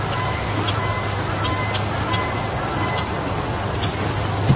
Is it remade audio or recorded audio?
recorded